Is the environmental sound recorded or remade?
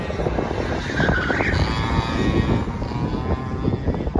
recorded